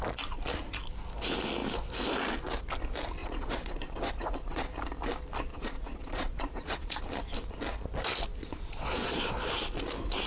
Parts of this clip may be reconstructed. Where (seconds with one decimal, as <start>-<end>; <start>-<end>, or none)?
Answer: 3.2-4.7; 5.5-7.0; 8.4-9.3

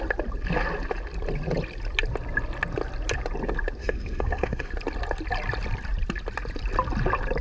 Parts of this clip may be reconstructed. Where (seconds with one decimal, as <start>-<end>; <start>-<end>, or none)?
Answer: 3.8-4.7

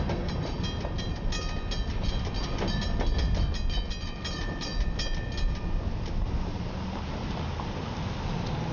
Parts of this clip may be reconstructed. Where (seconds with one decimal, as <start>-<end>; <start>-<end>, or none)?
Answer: none